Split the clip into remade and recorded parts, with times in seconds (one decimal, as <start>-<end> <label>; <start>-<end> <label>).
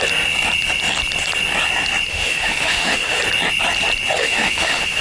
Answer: 0.0-2.1 recorded; 2.1-3.2 remade; 3.2-4.2 recorded; 4.2-5.0 remade